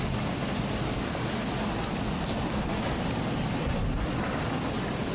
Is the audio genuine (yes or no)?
yes